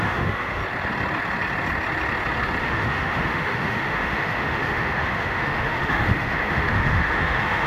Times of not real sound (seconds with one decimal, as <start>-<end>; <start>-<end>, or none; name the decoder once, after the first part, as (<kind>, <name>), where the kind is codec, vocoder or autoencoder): 0.0-0.6 (autoencoder, DAC-VAE); 2.6-7.7